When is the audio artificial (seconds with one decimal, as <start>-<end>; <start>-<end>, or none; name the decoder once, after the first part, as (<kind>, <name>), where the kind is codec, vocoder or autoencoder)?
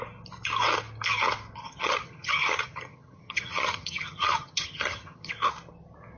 1.6-5.3 (vocoder, HiFi-GAN)